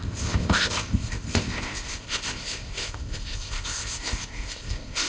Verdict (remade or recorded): remade